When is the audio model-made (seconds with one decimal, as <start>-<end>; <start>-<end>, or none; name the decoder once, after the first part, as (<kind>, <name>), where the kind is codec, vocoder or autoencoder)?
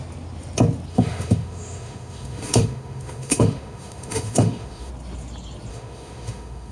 0.9-4.9 (autoencoder, DAC-VAE); 5.7-6.7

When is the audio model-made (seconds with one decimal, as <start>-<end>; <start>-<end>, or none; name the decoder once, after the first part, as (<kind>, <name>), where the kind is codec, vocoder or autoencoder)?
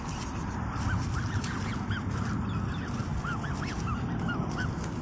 none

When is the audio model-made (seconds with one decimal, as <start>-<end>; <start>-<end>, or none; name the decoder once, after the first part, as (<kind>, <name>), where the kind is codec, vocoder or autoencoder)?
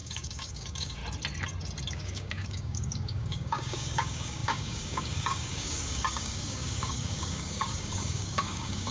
0.0-1.0 (codec, DAC); 1.9-8.9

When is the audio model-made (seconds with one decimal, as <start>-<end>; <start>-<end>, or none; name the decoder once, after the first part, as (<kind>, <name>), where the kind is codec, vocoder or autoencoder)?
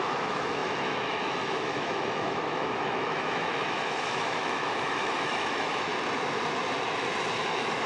0.0-5.9 (autoencoder, DAC-VAE); 7.4-7.9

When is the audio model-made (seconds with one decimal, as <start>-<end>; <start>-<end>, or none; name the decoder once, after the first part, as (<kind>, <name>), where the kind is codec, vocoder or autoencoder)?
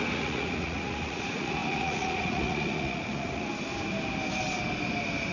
0.0-3.5 (vocoder, Vocos)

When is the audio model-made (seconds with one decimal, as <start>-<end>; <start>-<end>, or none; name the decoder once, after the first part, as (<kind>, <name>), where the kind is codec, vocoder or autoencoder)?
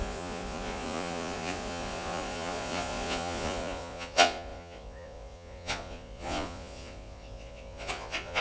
0.0-8.4 (vocoder, Vocos)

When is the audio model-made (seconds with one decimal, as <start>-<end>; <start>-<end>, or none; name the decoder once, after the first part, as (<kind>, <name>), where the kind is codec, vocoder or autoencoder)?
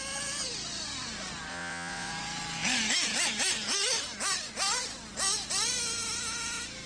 1.5-2.1 (vocoder, Vocos)